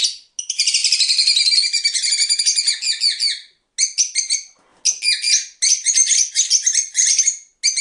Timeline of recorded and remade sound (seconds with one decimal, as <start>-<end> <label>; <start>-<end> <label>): 0.0-7.8 recorded